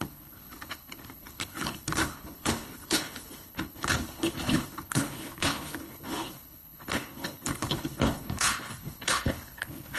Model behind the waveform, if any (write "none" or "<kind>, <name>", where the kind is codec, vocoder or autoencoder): codec, HILCodec